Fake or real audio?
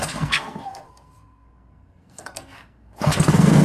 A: fake